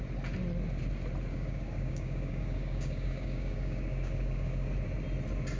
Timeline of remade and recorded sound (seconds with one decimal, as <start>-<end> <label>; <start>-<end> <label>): 0.0-1.3 recorded; 1.3-4.7 remade; 4.7-5.6 recorded